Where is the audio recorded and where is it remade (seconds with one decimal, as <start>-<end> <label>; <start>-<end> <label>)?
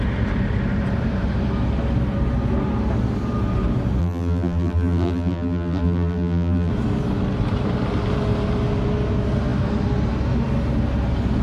0.0-4.0 recorded; 4.0-6.7 remade; 6.7-11.4 recorded